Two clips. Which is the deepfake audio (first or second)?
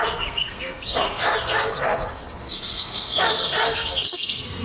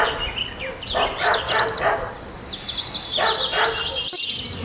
first